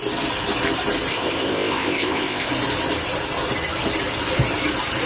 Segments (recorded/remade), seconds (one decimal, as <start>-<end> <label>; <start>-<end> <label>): 0.0-1.1 recorded; 1.1-2.5 remade; 2.5-5.1 recorded